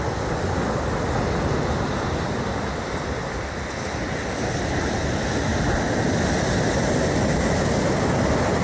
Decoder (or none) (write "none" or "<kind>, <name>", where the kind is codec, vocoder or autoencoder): none